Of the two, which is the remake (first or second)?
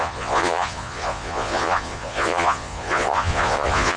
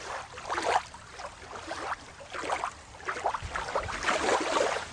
first